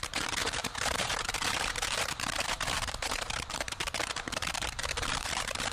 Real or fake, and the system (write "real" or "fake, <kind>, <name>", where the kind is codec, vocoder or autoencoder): fake, vocoder, BigVGAN v2